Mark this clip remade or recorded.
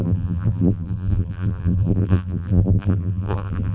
remade